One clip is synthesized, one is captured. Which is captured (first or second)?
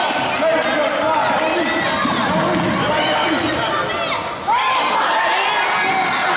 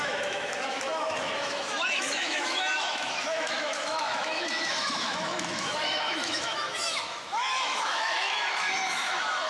first